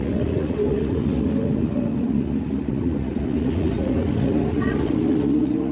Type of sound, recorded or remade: remade